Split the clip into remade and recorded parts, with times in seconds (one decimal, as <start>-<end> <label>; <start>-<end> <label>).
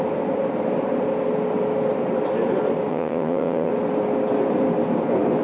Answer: 0.0-2.9 recorded; 2.9-3.7 remade; 3.7-5.4 recorded